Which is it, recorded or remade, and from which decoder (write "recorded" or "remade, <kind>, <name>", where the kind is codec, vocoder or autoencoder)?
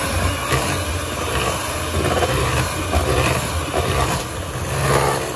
recorded